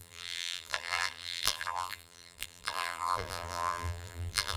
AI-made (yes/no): yes